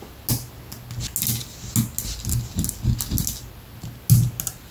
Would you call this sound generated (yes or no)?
no